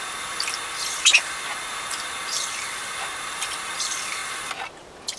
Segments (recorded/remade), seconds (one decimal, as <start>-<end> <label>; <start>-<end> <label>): 0.0-5.2 recorded